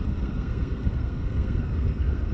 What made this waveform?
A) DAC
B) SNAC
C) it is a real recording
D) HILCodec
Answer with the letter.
B